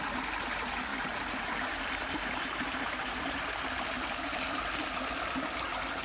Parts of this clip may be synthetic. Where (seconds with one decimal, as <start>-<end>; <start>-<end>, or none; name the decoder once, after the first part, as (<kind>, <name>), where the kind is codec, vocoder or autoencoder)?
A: 0.9-4.5 (vocoder, BigVGAN v2)